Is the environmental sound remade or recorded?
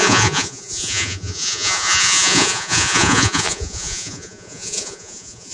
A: remade